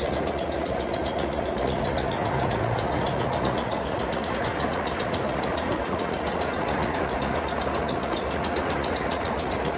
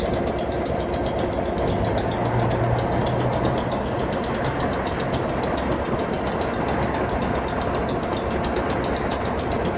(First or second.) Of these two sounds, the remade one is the first